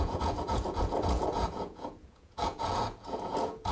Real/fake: fake